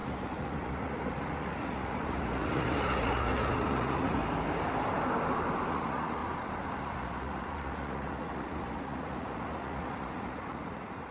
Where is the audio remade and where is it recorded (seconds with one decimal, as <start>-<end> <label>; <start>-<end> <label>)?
0.0-4.2 remade; 4.2-5.7 recorded; 5.7-6.2 remade; 6.2-6.8 recorded; 6.8-11.1 remade